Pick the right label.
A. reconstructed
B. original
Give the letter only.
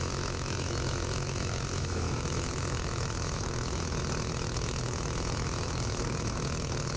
A